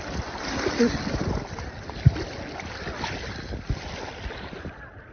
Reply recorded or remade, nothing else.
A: recorded